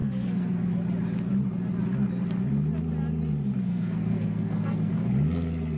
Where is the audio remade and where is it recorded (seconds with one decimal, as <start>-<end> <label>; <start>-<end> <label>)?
0.0-0.7 remade; 0.7-3.7 recorded; 3.7-4.9 remade; 4.9-5.8 recorded